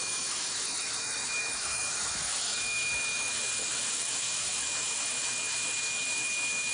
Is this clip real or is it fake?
fake